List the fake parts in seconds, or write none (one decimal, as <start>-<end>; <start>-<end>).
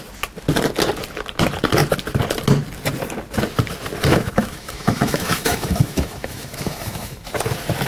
4.1-7.3